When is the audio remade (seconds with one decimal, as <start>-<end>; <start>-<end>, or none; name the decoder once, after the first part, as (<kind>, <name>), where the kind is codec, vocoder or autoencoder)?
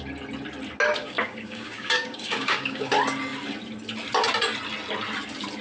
1.0-2.9 (codec, DAC)